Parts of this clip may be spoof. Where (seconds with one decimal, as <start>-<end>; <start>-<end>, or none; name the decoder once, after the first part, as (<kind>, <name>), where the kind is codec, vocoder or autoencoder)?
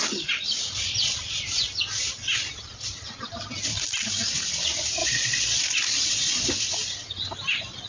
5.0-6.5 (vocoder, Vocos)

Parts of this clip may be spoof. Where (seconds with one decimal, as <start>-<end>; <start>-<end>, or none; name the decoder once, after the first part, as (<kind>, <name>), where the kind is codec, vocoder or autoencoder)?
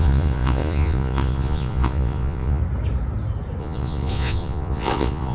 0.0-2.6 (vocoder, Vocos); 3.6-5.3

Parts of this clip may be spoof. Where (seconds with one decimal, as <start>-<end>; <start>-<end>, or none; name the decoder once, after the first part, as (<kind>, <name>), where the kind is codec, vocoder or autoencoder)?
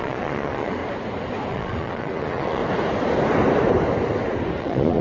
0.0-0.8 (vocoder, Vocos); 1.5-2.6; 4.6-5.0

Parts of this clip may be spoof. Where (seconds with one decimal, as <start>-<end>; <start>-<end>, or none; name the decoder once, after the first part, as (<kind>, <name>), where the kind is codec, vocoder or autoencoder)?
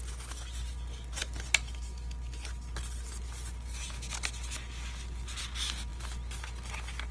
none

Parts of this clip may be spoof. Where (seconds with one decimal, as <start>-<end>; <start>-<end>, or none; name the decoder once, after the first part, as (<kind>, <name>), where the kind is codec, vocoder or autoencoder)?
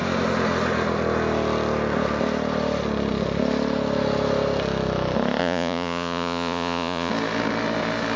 5.4-7.1 (vocoder, Vocos)